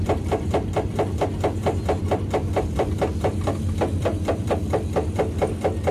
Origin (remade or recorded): remade